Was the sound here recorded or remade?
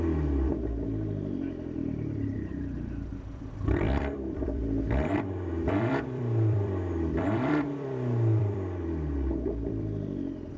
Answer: remade